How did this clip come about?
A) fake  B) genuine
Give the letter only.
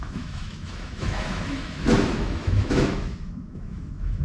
A